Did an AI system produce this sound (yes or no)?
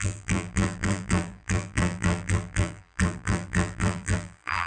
yes